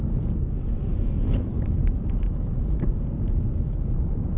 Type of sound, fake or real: fake